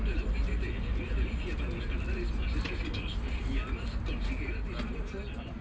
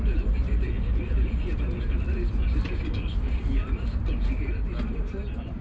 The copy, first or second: second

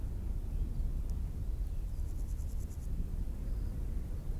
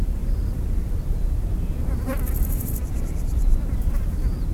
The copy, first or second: second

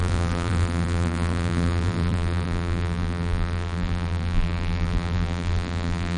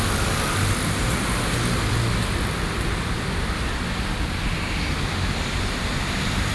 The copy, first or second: first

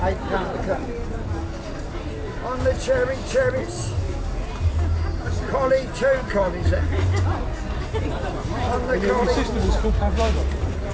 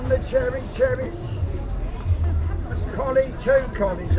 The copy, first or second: second